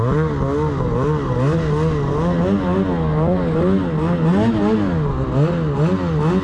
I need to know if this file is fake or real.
real